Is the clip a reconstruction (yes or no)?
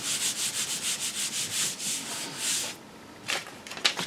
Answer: no